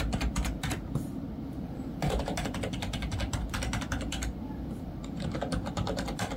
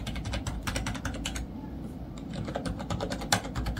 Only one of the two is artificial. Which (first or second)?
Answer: first